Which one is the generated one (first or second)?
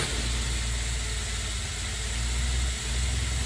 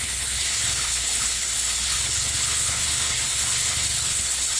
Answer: second